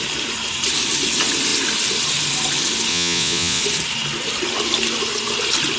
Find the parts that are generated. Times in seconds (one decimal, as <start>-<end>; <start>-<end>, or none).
2.9-3.6